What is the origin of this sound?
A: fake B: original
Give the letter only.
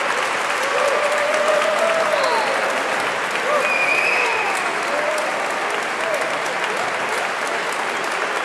B